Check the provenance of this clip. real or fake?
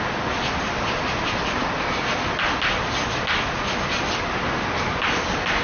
real